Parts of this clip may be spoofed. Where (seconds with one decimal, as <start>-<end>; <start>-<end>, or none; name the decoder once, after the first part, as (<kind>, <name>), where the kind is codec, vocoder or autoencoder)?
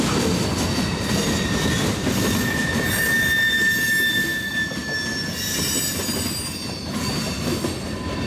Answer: none